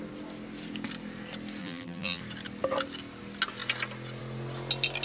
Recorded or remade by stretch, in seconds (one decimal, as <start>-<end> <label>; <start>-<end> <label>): 0.0-1.6 recorded; 1.6-2.2 remade; 2.2-5.0 recorded